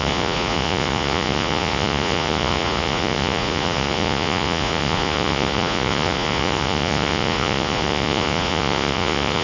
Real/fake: fake